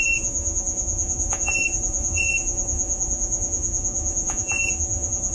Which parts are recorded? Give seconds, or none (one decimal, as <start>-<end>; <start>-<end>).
none